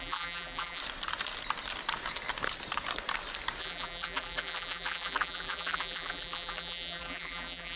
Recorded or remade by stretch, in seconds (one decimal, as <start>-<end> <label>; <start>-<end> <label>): 0.0-0.8 remade; 0.8-3.6 recorded; 3.6-7.8 remade